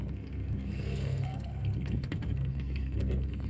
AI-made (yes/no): yes